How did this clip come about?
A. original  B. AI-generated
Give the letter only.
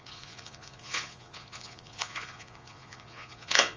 B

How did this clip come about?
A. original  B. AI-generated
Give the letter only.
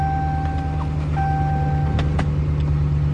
A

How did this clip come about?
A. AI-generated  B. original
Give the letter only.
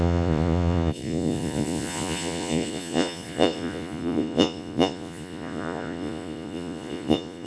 A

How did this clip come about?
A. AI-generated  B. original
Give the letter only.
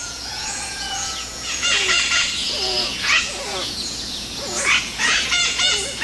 A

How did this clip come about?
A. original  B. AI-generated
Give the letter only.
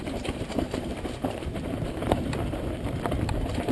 B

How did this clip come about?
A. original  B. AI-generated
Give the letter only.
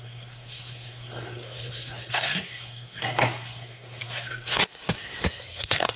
B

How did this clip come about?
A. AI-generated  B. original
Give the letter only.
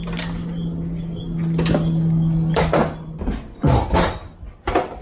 B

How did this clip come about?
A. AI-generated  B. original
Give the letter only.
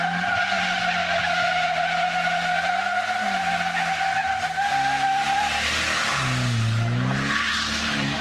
B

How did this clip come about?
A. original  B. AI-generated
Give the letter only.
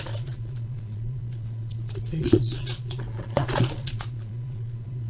B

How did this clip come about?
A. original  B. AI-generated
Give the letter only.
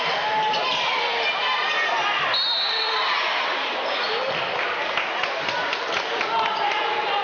A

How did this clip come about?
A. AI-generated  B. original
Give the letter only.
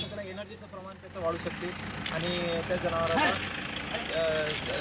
B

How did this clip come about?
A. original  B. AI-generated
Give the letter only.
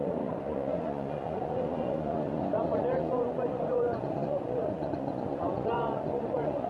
B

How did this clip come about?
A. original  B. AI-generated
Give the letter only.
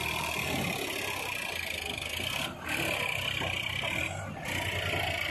A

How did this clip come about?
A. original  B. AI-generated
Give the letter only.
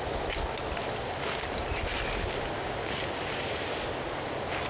A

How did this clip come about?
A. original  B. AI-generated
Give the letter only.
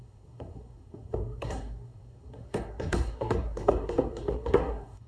B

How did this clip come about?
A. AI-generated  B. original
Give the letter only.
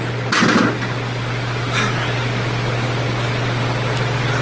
B